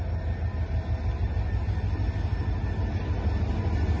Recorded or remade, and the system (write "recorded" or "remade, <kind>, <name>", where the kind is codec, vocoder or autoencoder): recorded